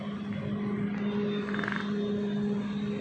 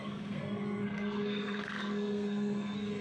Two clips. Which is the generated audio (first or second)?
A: second